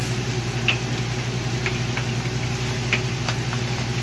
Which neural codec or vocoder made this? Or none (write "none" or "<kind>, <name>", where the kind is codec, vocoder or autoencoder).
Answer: none